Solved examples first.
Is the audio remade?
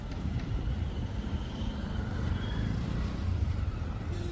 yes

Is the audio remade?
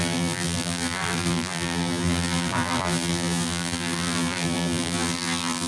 yes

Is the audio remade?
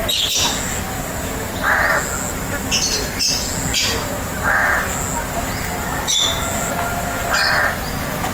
no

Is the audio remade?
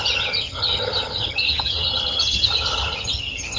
yes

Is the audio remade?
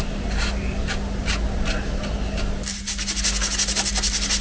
no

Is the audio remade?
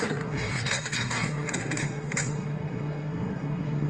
yes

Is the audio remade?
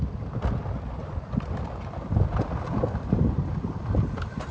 no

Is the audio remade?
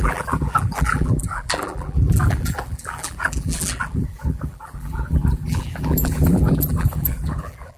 yes